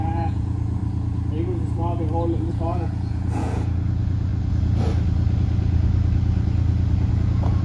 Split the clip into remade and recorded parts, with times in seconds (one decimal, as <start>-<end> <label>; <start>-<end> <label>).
0.0-0.8 remade; 0.8-2.5 recorded; 2.5-4.3 remade; 4.3-7.1 recorded; 7.1-7.6 remade